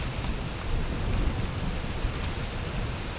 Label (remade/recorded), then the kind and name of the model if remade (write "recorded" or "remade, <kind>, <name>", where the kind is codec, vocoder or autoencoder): remade, vocoder, BigVGAN v2